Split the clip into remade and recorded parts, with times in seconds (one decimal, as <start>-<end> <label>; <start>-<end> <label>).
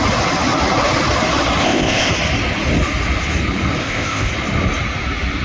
0.0-1.6 recorded; 1.6-2.1 remade; 2.1-3.8 recorded; 3.8-4.3 remade; 4.3-5.4 recorded